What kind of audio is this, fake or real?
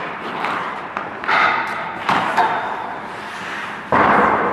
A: fake